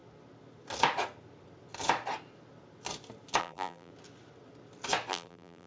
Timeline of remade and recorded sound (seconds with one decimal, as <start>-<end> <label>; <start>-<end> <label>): 0.0-3.4 recorded; 3.4-3.9 remade; 3.9-5.1 recorded; 5.1-5.7 remade